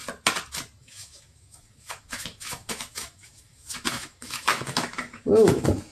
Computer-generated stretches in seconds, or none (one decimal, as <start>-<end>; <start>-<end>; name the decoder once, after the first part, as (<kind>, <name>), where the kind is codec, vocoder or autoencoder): 0.8-5.9 (autoencoder, DAC-VAE)